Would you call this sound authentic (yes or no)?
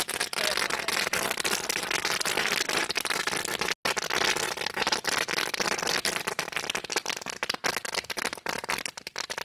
yes